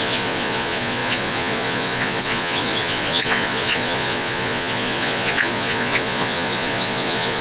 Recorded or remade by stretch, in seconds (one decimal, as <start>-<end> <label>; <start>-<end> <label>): 0.0-7.4 remade